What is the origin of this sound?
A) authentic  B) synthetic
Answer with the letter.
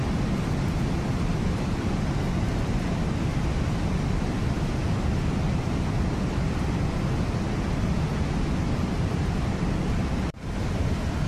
A